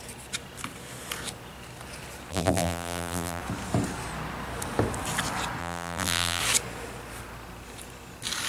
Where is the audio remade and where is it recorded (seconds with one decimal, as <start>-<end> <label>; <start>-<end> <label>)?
0.0-2.3 recorded; 2.3-3.4 remade; 3.4-5.6 recorded; 5.6-6.4 remade; 6.4-8.5 recorded